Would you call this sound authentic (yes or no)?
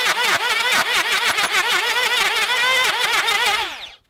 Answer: yes